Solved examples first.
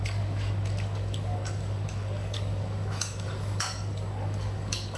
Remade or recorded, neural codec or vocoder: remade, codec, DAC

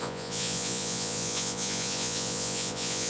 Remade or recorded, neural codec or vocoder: remade, vocoder, Vocos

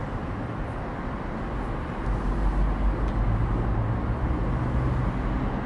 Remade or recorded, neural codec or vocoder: recorded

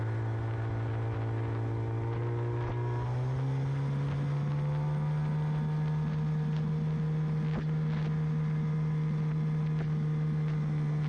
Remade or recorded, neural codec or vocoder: recorded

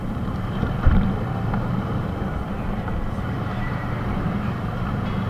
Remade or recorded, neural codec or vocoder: remade, vocoder, BigVGAN v2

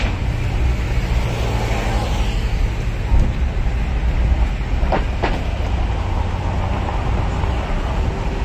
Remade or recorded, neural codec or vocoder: recorded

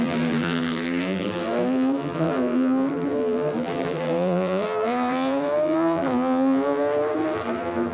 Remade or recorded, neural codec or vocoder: remade, vocoder, BigVGAN v2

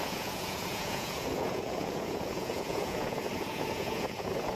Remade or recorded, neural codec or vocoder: remade, vocoder, Vocos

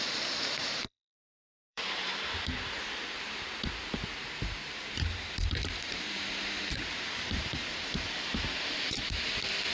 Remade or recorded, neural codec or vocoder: remade, vocoder, BigVGAN v2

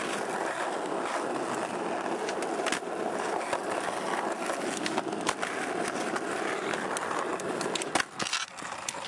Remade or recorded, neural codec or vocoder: recorded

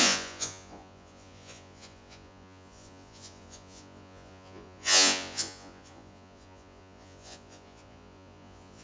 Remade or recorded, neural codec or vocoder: remade, vocoder, Vocos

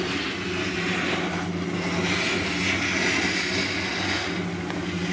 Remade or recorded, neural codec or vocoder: recorded